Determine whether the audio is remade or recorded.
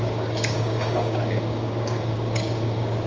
remade